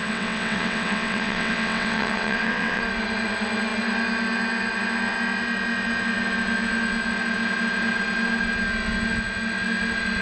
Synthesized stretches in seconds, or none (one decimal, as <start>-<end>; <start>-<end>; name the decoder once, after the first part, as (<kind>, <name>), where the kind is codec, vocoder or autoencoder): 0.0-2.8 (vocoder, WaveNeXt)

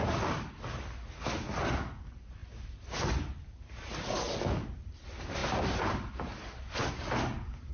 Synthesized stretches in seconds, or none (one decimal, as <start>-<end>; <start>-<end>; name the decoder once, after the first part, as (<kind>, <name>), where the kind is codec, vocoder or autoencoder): none

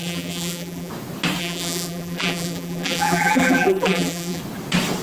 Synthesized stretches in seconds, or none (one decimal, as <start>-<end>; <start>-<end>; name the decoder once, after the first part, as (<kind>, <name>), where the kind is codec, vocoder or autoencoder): 0.0-0.9 (vocoder, BigVGAN v2); 1.4-4.4